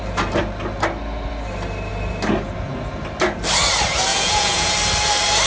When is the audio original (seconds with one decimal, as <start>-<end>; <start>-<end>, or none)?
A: 0.0-4.1; 4.7-5.5